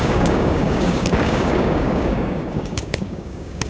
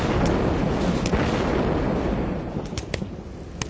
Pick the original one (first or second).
second